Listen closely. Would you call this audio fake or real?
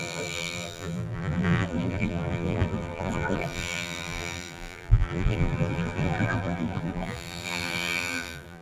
fake